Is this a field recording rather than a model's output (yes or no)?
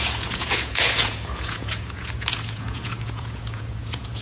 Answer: no